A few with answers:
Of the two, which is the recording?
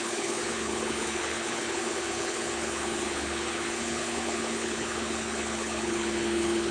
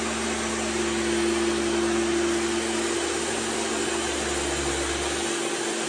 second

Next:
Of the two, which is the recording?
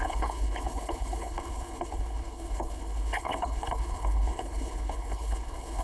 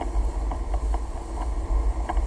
second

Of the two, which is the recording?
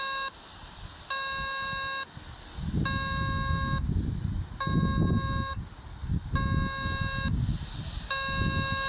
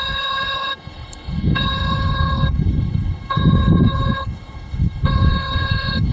first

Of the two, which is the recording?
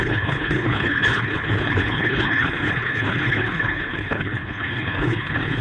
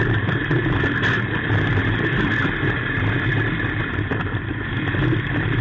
second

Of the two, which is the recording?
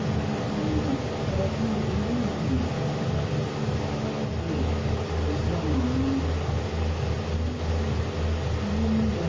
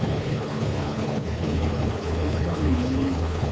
first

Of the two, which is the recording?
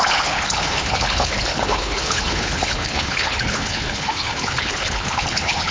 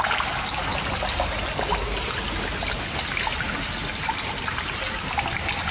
second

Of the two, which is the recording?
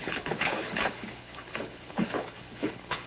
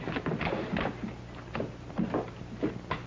second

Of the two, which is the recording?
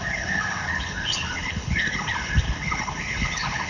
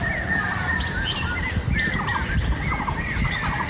second